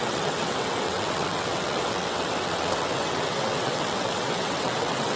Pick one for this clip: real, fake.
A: fake